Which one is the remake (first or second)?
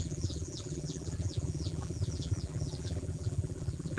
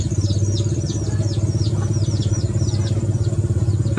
first